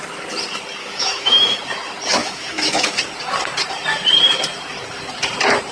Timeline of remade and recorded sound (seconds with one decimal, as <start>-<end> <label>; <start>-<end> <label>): 0.0-0.8 recorded; 0.8-1.6 remade; 1.6-2.2 recorded; 2.2-3.0 remade; 3.0-5.7 recorded